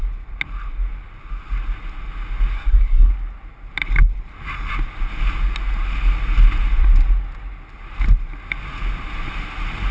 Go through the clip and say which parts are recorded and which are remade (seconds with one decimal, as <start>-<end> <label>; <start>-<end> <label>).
0.0-2.5 recorded; 2.5-3.1 remade; 3.1-9.9 recorded